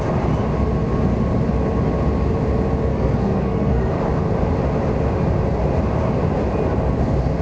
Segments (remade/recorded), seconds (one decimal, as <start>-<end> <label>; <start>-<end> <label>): 0.0-2.9 recorded; 2.9-3.9 remade; 3.9-7.4 recorded